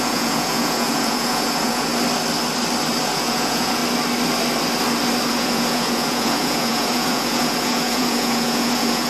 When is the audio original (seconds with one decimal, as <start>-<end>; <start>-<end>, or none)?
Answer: 1.9-3.0; 3.8-5.3